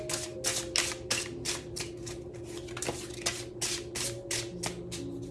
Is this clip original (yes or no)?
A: yes